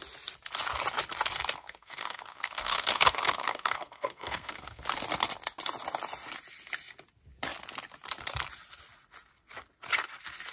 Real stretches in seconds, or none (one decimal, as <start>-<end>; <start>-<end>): 0.0-1.6; 4.8-10.5